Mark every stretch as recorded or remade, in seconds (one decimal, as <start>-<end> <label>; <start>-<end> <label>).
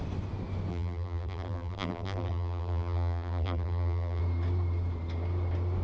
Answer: 0.0-0.7 recorded; 0.7-4.2 remade; 4.2-5.8 recorded